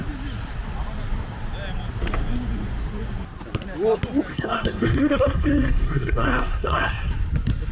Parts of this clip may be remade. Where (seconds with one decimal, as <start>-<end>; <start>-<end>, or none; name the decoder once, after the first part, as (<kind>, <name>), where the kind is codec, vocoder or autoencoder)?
4.3-7.1 (codec, SNAC)